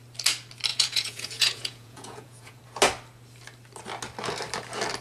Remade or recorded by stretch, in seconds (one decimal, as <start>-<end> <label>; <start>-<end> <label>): 0.0-0.7 recorded; 0.7-2.6 remade; 2.6-5.0 recorded